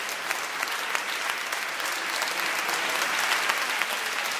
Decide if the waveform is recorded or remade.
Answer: recorded